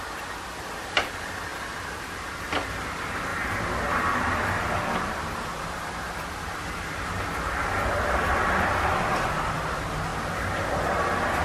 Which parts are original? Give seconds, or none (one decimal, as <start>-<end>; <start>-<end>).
0.0-11.4